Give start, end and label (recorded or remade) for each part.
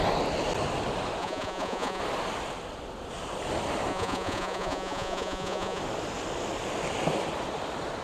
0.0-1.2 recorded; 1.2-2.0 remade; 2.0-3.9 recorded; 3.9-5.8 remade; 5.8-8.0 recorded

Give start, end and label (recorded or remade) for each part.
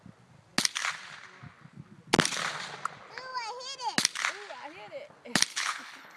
0.0-5.5 recorded; 5.5-6.2 remade